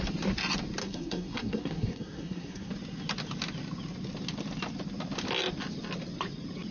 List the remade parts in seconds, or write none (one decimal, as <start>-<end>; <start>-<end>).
0.8-2.7